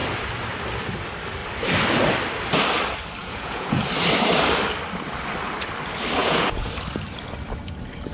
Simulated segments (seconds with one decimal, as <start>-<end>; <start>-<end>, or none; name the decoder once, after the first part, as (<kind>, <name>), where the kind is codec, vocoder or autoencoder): 3.2-3.8 (vocoder, Vocos); 6.2-6.7